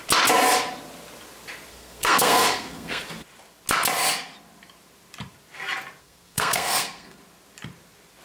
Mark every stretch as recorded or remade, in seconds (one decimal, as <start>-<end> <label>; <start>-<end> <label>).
0.0-1.7 recorded; 1.7-3.0 remade; 3.0-6.0 recorded; 6.0-7.2 remade; 7.2-8.2 recorded